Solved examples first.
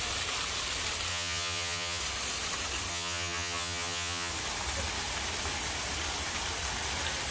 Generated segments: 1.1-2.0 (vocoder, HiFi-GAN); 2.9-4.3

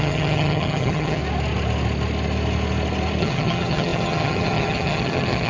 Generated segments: 0.0-1.2 (vocoder, HiFi-GAN); 3.2-5.5